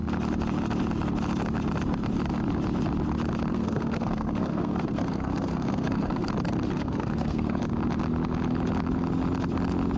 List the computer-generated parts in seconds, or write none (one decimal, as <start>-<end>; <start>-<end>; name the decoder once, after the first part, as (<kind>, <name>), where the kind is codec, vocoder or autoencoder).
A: 3.5-6.3 (codec, SNAC); 6.7-7.6